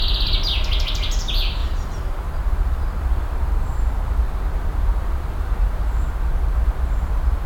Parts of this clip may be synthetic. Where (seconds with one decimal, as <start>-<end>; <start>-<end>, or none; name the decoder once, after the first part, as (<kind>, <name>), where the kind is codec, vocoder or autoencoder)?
1.6-6.1 (vocoder, BigVGAN v2)